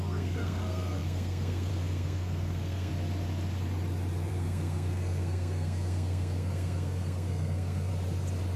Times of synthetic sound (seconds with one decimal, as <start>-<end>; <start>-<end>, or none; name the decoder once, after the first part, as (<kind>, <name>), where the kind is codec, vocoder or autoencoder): 0.0-2.9 (codec, SNAC); 4.3-7.9

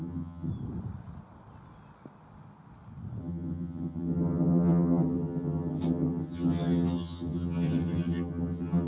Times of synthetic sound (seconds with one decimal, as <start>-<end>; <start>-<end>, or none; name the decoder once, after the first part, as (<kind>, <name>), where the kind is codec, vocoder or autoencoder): 0.0-0.5 (vocoder, HiFi-GAN); 3.2-8.9

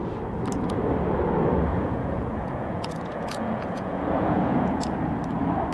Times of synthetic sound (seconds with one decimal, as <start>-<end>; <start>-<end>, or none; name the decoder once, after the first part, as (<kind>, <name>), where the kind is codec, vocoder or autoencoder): 1.7-5.0 (vocoder, Vocos)

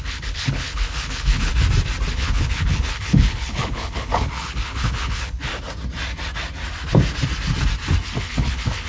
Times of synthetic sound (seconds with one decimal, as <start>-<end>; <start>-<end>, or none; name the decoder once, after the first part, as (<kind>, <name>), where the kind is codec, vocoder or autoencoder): 0.0-1.5 (codec, HILCodec); 2.1-5.5; 8.2-8.9

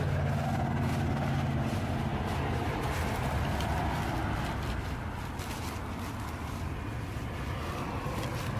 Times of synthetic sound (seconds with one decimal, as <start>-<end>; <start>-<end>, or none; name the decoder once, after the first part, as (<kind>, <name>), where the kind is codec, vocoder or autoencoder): 2.1-3.8 (vocoder, BigVGAN v2); 4.2-7.8

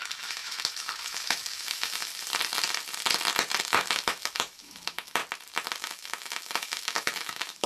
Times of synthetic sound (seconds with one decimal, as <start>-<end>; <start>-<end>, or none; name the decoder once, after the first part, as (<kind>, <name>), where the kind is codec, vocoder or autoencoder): 0.0-2.1 (autoencoder, DAC-VAE); 3.6-5.2; 5.8-7.7

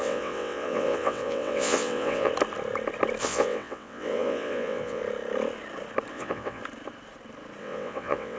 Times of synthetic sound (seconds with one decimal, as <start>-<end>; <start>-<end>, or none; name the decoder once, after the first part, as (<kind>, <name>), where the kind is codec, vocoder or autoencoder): 0.0-2.3 (vocoder, WaveNeXt); 3.2-5.0; 6.1-6.6; 7.6-8.4